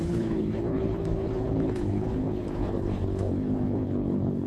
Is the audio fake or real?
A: fake